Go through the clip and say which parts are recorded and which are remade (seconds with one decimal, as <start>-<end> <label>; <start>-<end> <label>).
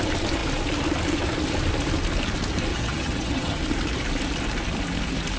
0.0-2.7 recorded; 2.7-3.6 remade; 3.6-5.4 recorded